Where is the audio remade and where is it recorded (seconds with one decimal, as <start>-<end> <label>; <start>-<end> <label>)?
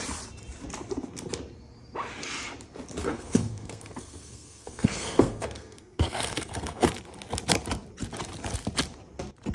0.0-3.0 recorded; 3.0-6.9 remade; 6.9-9.5 recorded